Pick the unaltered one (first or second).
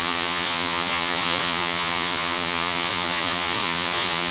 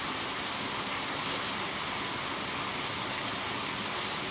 second